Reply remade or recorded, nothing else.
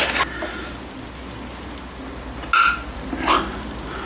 recorded